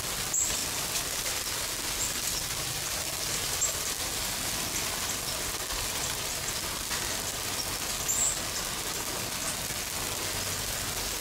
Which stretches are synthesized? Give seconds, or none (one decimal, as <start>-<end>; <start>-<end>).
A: none

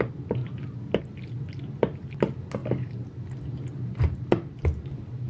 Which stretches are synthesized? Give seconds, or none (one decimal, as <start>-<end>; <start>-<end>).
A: none

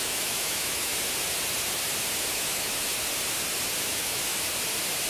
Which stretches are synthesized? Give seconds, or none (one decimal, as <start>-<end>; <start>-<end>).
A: 0.0-0.9; 2.3-2.9; 3.8-4.3

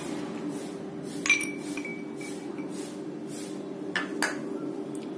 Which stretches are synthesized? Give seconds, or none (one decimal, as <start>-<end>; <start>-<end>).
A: none

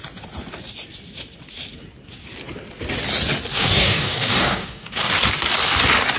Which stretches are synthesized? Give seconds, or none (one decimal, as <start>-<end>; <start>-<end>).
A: 3.5-5.1

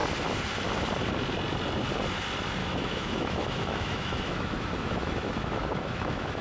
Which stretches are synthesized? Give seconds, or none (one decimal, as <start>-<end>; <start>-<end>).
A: 2.6-6.4

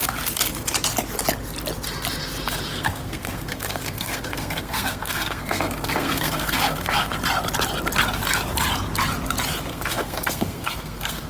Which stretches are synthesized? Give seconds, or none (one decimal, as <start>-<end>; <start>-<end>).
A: 2.7-7.2; 9.7-11.3